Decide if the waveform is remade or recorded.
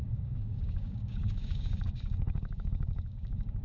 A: remade